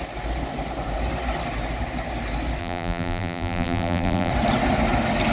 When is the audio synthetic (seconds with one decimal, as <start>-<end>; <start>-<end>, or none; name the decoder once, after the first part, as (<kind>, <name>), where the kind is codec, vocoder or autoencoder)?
2.6-4.3 (vocoder, BigVGAN v2)